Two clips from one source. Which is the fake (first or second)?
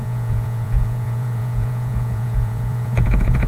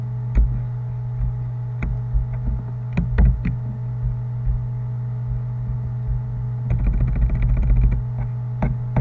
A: first